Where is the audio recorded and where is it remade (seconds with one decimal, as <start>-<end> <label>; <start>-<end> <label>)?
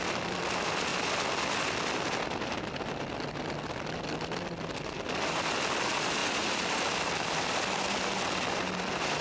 0.0-9.2 recorded